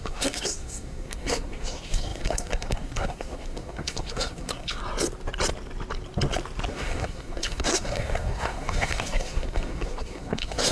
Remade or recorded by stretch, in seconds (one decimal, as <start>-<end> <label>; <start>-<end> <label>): 0.0-4.8 remade; 4.8-6.7 recorded; 6.7-10.7 remade